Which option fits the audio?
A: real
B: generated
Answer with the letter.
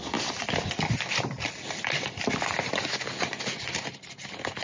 A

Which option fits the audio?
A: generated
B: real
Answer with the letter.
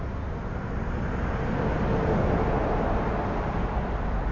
B